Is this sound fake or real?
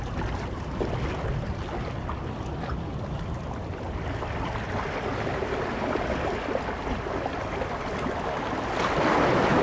real